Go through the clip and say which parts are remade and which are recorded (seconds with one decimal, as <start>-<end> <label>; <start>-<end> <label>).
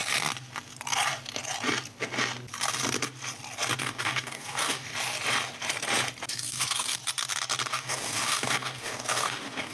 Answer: 0.0-3.8 recorded; 3.8-4.9 remade; 4.9-6.3 recorded; 6.3-7.0 remade; 7.0-7.7 recorded; 7.7-9.7 remade